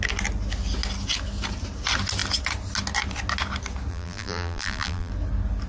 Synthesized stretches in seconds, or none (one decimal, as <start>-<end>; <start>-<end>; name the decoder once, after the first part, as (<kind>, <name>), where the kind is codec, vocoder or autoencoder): 3.9-5.1 (vocoder, BigVGAN v2)